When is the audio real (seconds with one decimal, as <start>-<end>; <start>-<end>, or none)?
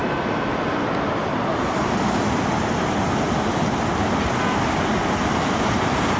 0.0-6.2